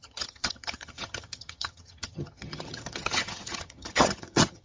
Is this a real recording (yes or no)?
no